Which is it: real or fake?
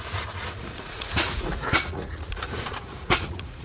fake